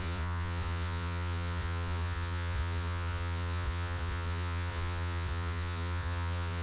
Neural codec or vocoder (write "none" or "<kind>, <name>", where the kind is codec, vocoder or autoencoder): vocoder, Vocos